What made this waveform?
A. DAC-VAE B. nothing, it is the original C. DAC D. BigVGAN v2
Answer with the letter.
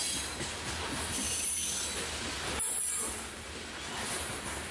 B